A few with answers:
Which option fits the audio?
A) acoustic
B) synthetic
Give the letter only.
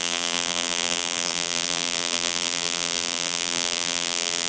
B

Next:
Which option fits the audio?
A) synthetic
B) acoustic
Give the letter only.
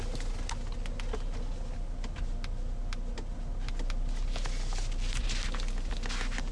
B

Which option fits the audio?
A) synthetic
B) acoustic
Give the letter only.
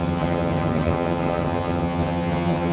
A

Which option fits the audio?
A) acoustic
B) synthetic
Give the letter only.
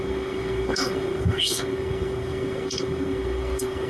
B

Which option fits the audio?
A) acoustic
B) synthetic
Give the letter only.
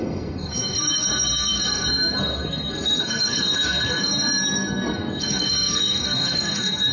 B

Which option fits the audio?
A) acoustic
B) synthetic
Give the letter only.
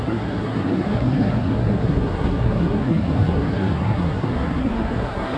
B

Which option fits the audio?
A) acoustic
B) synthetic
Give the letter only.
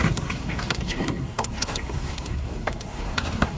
B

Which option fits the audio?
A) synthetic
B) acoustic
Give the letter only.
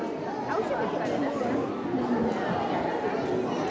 B